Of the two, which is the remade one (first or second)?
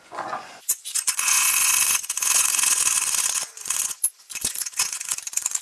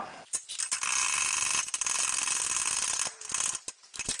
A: first